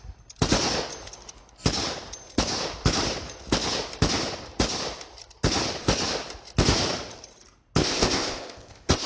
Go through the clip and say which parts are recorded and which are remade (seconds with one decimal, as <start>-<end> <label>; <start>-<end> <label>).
0.0-7.8 recorded; 7.8-9.1 remade